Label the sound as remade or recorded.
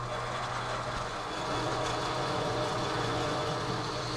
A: remade